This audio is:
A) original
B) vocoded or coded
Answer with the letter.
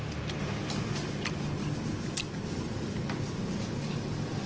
A